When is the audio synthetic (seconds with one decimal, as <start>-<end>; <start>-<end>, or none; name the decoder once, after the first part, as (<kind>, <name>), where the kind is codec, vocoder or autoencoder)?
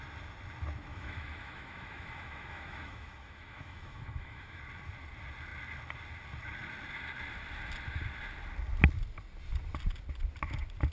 0.9-4.6 (autoencoder, DAC-VAE)